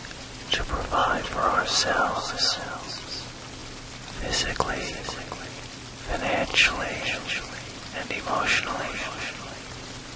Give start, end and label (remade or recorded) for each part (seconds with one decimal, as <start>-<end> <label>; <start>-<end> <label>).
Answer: 0.0-0.6 remade; 0.6-6.5 recorded; 6.5-10.2 remade